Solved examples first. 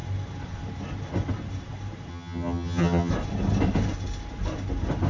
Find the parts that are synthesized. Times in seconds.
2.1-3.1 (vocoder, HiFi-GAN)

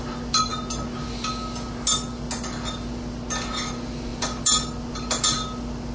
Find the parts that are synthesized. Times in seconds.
none

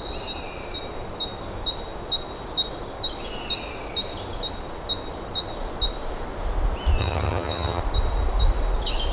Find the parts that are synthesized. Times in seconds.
7.0-7.8 (vocoder, HiFi-GAN)